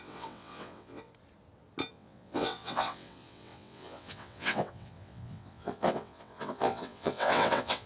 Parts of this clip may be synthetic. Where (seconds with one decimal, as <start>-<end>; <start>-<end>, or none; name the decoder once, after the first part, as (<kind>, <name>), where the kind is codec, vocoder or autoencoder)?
0.0-1.1 (vocoder, WaveNeXt); 1.9-7.9